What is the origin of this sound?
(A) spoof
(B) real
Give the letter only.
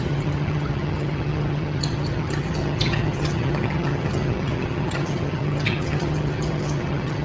A